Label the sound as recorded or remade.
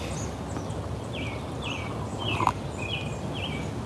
recorded